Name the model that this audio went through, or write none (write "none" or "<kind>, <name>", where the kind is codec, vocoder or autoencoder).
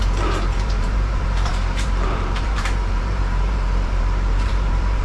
vocoder, BigVGAN v2